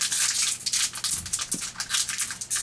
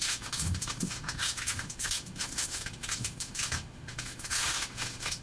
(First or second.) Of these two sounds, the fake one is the second